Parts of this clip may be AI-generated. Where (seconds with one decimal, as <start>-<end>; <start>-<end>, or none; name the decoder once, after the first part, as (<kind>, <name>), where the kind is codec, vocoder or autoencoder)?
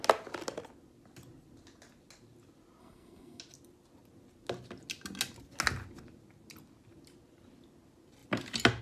2.8-3.4 (codec, SNAC)